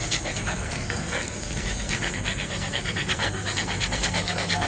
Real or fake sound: fake